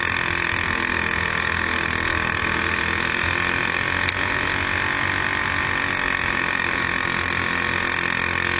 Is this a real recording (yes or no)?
yes